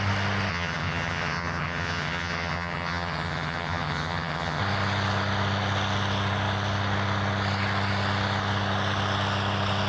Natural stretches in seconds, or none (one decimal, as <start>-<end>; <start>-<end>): 0.0-0.5; 4.6-9.9